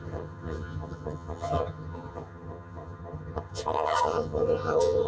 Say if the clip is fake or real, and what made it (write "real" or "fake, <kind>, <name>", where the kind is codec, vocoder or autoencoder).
fake, vocoder, HiFi-GAN